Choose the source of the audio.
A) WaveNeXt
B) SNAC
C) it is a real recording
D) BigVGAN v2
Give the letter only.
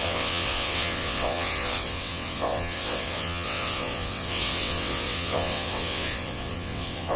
A